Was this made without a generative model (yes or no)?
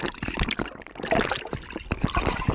yes